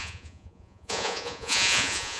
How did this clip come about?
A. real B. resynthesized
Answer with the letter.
B